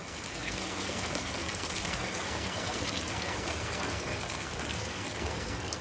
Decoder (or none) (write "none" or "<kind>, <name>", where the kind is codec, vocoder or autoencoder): codec, SNAC